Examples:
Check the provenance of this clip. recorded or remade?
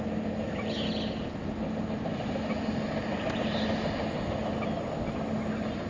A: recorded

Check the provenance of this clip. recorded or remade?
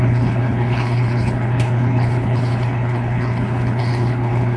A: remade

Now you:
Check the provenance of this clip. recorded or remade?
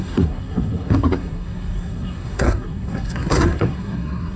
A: remade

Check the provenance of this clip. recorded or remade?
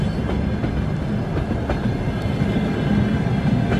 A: recorded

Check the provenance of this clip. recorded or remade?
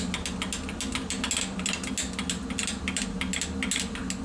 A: recorded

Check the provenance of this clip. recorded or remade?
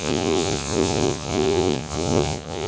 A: remade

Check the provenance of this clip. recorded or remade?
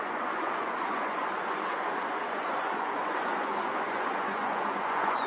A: remade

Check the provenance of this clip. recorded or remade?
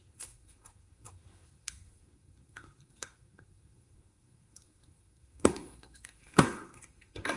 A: remade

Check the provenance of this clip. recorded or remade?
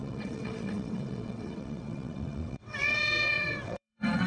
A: remade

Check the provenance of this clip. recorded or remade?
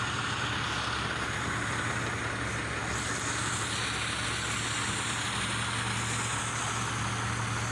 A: recorded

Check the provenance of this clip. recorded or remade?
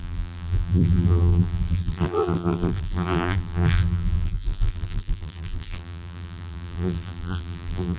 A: remade